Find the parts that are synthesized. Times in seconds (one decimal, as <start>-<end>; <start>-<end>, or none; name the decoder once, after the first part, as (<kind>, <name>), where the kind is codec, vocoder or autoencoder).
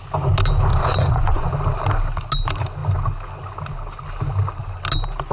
0.7-1.5 (vocoder, Vocos)